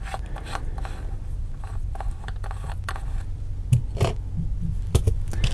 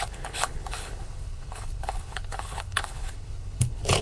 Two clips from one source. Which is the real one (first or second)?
first